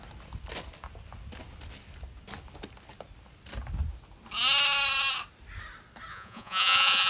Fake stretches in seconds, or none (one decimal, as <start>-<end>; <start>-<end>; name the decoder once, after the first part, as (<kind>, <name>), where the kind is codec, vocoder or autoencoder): 6.1-7.1 (vocoder, Vocos)